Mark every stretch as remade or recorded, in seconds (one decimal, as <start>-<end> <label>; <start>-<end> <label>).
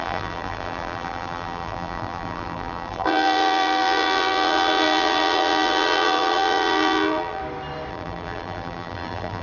0.0-7.4 remade; 7.4-7.9 recorded; 7.9-9.4 remade